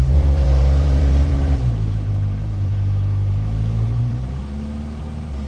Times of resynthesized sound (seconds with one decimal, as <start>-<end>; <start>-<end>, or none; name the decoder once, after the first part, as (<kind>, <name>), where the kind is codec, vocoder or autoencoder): 0.0-4.4 (vocoder, BigVGAN v2); 5.0-5.5